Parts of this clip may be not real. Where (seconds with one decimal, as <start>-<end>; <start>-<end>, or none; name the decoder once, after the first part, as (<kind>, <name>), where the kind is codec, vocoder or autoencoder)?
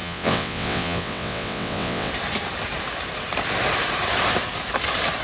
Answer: 0.0-2.1 (vocoder, WaveNeXt)